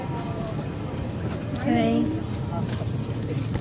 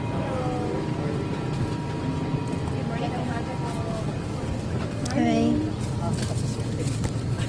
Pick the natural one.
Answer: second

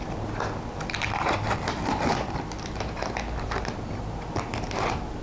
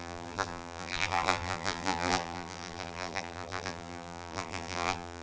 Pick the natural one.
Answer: first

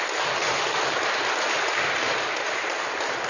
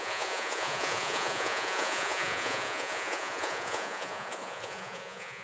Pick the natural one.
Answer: first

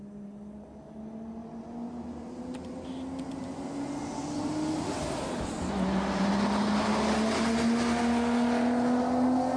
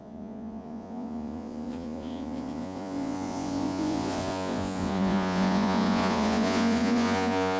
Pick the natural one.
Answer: first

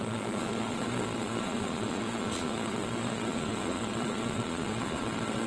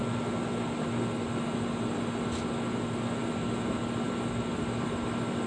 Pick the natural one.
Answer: second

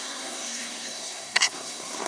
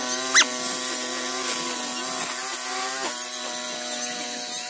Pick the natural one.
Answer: second